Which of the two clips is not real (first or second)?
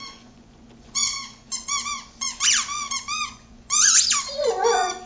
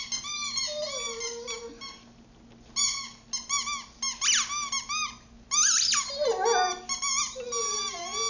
first